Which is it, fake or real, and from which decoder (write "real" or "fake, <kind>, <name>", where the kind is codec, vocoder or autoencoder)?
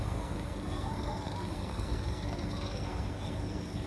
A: fake, codec, SNAC